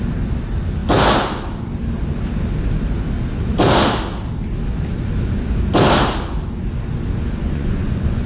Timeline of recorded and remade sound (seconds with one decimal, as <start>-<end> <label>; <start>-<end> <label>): 0.0-7.4 recorded; 7.4-8.3 remade

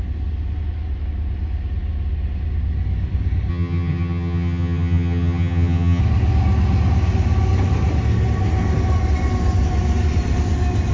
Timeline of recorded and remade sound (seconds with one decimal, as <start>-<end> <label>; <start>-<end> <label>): 0.0-3.5 recorded; 3.5-6.0 remade; 6.0-10.9 recorded